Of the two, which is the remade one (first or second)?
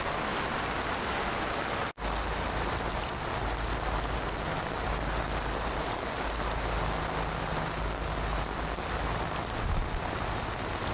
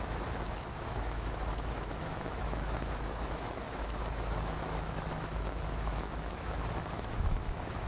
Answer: second